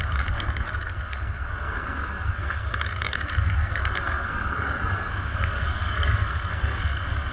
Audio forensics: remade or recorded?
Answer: remade